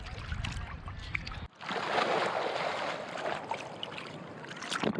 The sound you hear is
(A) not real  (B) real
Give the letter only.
B